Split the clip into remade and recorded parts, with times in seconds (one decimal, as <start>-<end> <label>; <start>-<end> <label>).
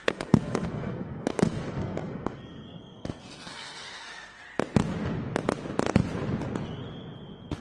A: 0.0-4.4 remade; 4.4-7.6 recorded